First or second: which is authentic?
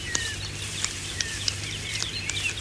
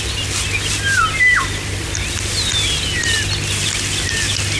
second